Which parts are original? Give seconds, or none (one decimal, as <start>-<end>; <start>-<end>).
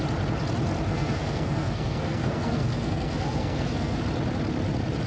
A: 0.0-0.9; 4.0-5.1